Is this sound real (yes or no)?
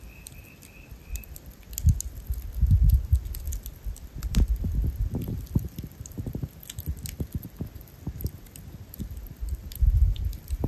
yes